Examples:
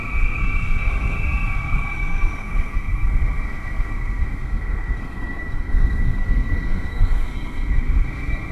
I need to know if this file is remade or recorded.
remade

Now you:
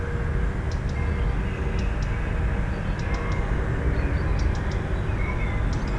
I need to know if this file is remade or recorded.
recorded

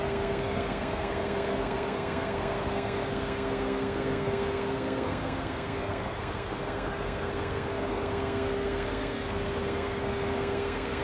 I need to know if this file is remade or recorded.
remade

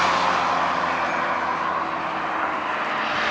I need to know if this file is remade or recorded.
recorded